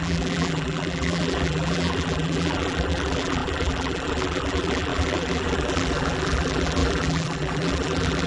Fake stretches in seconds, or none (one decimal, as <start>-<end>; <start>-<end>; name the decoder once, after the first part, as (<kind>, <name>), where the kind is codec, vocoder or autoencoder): 0.0-8.3 (vocoder, BigVGAN v2)